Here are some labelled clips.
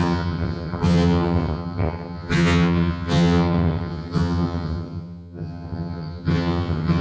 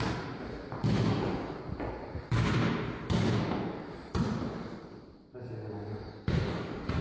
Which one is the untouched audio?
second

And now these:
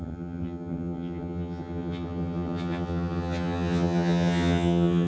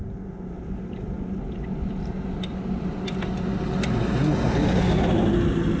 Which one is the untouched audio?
second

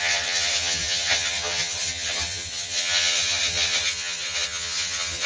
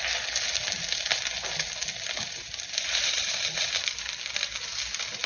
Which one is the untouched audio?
second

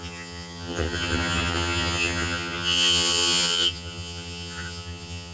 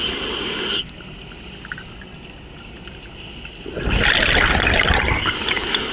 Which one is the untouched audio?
second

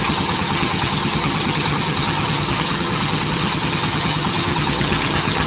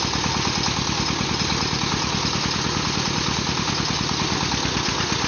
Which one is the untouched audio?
second